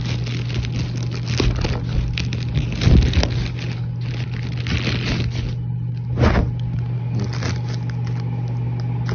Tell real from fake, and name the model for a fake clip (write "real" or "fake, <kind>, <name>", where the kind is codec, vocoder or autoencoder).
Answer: real